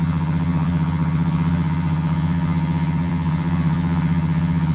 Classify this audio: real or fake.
fake